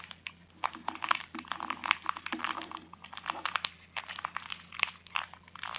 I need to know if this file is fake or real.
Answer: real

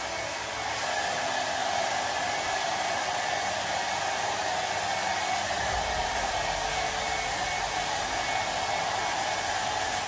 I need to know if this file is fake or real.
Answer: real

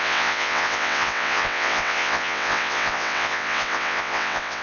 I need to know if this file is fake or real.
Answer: fake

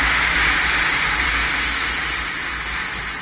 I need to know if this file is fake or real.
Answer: real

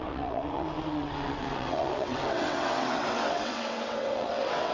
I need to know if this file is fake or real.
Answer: fake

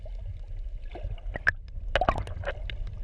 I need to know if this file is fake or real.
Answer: real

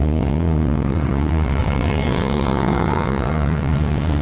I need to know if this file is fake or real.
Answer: fake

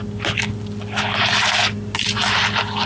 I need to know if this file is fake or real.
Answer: real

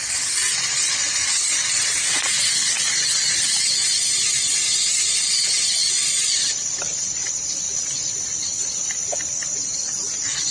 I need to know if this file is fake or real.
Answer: real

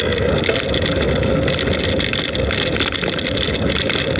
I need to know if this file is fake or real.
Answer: real